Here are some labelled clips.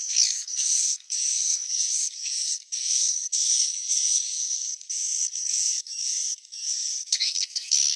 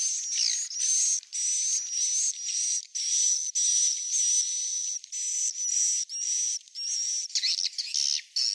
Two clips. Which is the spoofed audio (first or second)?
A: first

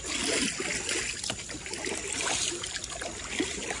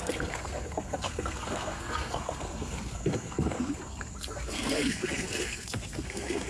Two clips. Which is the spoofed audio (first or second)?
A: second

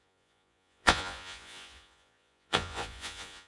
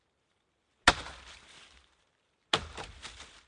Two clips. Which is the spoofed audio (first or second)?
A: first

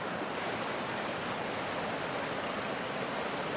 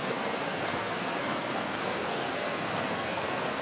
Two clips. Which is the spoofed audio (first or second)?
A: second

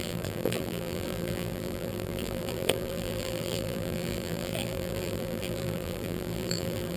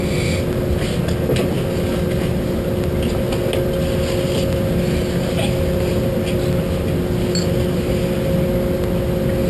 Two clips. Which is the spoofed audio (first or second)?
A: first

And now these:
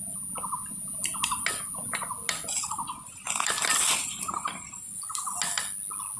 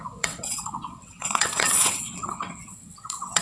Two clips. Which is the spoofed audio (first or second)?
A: second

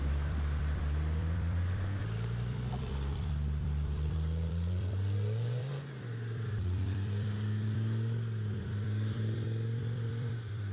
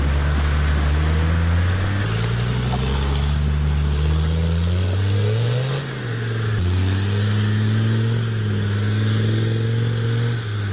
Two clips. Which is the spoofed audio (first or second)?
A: first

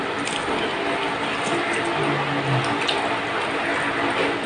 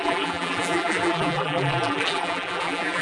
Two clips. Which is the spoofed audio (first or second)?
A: second